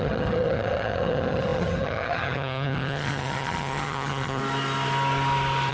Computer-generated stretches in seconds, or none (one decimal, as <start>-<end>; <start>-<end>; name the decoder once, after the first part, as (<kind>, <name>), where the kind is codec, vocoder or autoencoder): 0.0-4.4 (vocoder, HiFi-GAN)